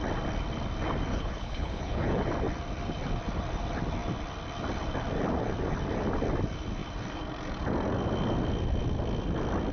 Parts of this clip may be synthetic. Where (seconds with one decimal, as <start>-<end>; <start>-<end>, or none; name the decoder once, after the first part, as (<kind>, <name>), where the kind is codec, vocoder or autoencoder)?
1.1-2.2 (codec, HILCodec)